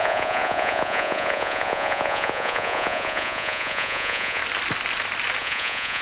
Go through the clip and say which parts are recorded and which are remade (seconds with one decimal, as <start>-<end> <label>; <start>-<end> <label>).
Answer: 0.0-4.4 remade; 4.4-5.4 recorded; 5.4-6.0 remade